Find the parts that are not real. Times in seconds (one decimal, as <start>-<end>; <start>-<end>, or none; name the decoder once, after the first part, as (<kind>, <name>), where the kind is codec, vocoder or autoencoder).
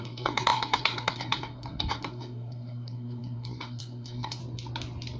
0.0-4.4 (codec, SNAC)